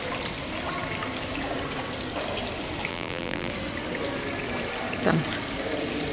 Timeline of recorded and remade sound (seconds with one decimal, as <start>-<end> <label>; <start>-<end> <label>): 0.0-2.9 recorded; 2.9-3.5 remade; 3.5-6.1 recorded